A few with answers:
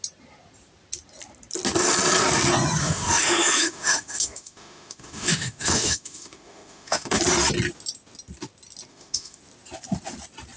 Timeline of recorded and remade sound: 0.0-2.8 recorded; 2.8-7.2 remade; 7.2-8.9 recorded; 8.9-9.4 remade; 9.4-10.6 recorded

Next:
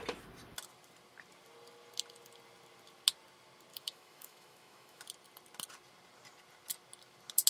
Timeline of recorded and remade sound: 0.0-3.7 recorded; 3.7-5.0 remade; 5.0-7.5 recorded

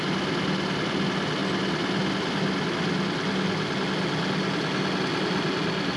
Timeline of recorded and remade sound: 0.0-6.0 recorded

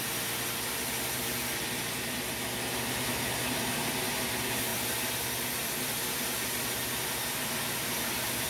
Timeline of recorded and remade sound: 0.0-8.5 recorded

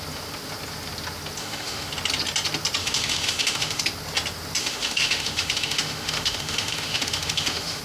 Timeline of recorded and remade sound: 0.0-1.4 recorded; 1.4-1.9 remade; 1.9-2.8 recorded; 2.8-3.8 remade; 3.8-4.6 recorded; 4.6-7.8 remade

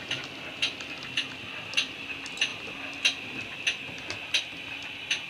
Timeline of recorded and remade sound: 0.0-5.3 recorded

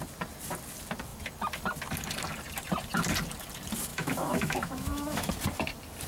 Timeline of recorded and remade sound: 0.0-3.9 recorded; 3.9-5.3 remade; 5.3-6.1 recorded

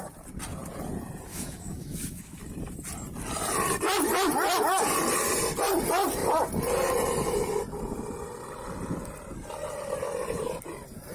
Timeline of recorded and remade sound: 0.0-1.3 recorded; 1.3-2.4 remade; 2.4-11.1 recorded